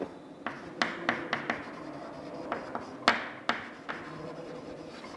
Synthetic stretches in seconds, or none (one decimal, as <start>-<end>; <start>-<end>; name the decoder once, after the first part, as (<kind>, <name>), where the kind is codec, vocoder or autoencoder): none